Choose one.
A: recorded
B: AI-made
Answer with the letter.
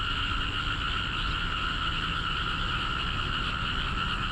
A